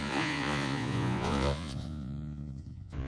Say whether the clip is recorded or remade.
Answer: remade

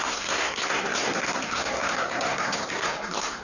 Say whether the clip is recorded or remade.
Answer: remade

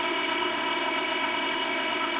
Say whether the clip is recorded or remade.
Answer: remade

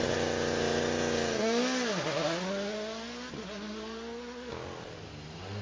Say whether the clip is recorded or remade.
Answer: recorded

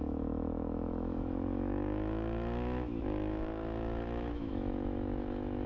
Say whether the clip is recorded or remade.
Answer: remade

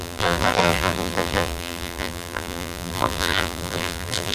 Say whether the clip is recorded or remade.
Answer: remade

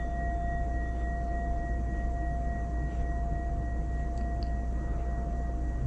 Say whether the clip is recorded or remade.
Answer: recorded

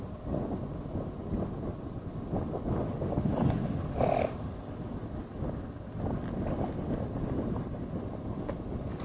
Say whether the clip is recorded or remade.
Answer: recorded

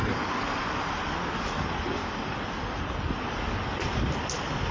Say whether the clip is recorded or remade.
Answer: recorded